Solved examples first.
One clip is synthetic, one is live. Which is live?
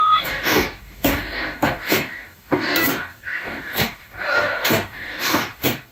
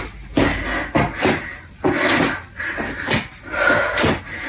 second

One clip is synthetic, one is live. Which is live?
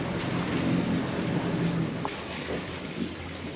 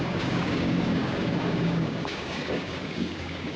first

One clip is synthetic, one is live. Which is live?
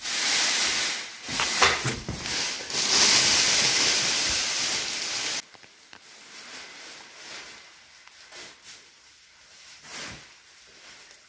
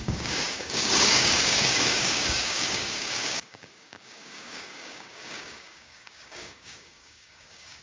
first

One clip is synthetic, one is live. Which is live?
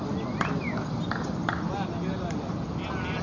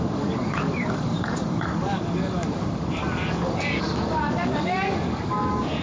first